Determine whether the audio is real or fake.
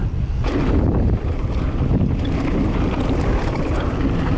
real